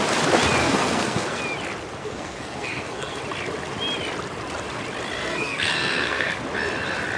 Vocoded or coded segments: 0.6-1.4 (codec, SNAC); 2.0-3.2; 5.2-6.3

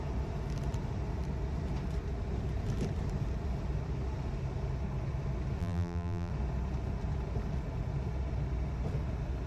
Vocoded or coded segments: 5.6-6.3 (vocoder, BigVGAN v2)

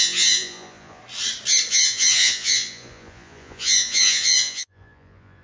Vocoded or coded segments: 0.0-1.0 (vocoder, Vocos); 1.7-5.4

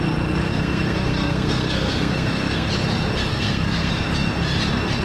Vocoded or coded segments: 0.5-2.7 (codec, SNAC); 3.3-3.9

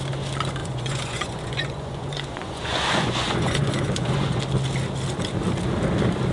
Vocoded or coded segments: 0.6-4.4 (vocoder, Vocos)